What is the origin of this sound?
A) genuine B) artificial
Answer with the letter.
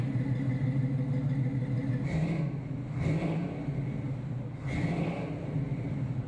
A